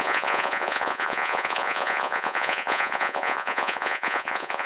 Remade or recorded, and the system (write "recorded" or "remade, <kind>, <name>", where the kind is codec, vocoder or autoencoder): remade, vocoder, Vocos